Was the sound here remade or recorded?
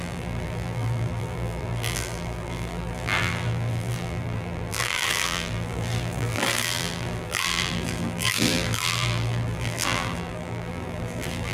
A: remade